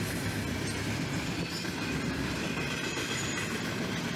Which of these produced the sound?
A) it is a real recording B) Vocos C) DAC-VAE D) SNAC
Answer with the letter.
A